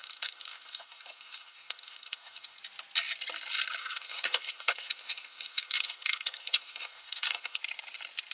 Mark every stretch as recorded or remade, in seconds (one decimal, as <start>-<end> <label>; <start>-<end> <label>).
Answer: 0.0-2.6 remade; 2.6-3.8 recorded; 3.8-7.6 remade; 7.6-8.3 recorded